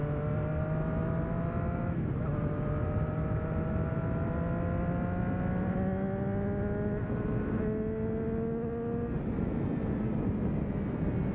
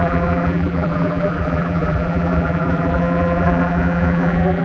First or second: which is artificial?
second